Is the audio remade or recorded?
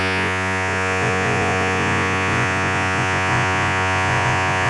remade